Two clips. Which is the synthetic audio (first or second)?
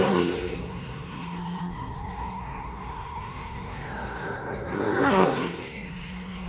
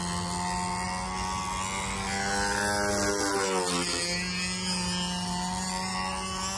first